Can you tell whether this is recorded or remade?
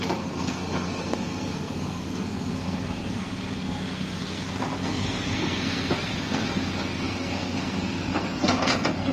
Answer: remade